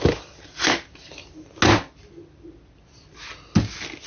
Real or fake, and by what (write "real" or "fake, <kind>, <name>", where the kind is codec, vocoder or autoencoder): real